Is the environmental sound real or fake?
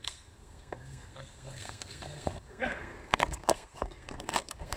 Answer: fake